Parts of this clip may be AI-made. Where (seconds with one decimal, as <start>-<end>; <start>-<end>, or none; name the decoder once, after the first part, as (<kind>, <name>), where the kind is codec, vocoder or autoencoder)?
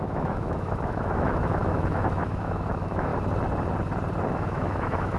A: 0.0-3.1 (autoencoder, DAC-VAE); 4.3-5.2